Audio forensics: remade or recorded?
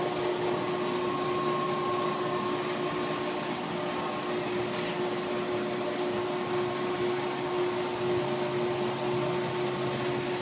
recorded